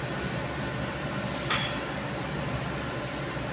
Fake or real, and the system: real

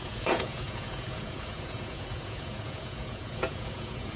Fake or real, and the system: fake, vocoder, Vocos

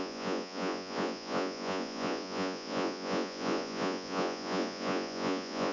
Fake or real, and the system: fake, vocoder, Vocos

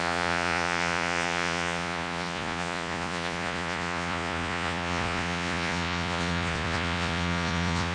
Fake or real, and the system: fake, vocoder, Vocos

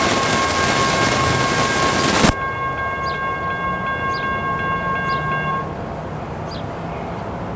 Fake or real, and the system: real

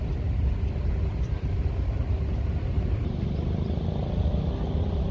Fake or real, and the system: real